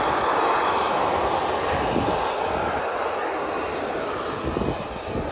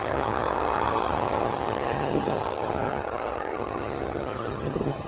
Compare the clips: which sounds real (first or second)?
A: first